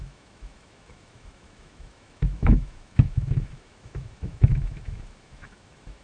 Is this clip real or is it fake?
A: fake